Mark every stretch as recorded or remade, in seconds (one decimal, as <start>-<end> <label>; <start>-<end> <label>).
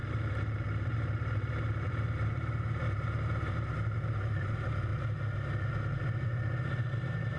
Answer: 0.0-4.9 remade; 4.9-6.8 recorded; 6.8-7.4 remade